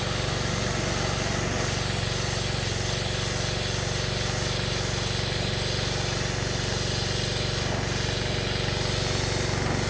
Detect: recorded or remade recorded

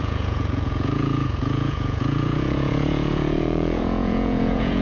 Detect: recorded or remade remade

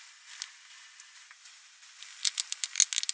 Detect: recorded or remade recorded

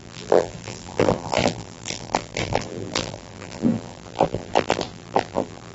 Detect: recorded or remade remade